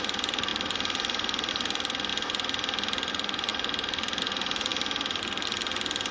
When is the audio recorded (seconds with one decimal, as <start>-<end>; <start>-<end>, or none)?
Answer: 2.1-3.1; 4.7-6.1